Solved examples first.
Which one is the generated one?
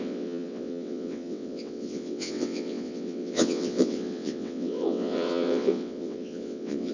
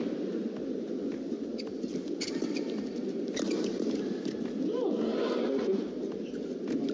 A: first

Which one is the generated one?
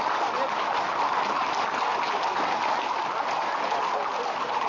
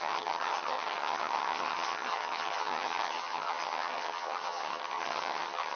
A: second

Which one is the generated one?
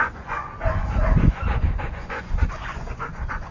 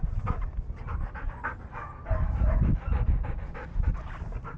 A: first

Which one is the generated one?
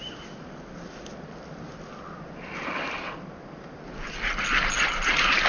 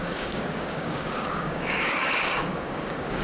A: second